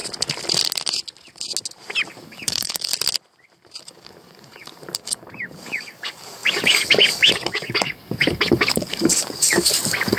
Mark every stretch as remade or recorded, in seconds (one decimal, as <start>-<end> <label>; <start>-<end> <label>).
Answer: 0.0-2.1 recorded; 2.1-2.9 remade; 2.9-3.8 recorded; 3.8-10.2 remade